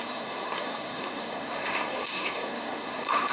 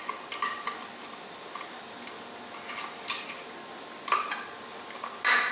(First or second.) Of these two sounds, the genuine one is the second